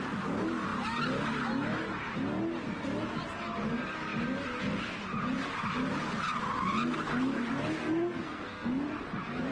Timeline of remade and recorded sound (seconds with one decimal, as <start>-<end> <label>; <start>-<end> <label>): 0.0-7.8 recorded; 7.8-8.7 remade; 8.7-9.5 recorded